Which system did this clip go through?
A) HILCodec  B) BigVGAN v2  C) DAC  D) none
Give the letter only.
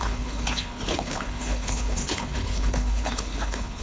A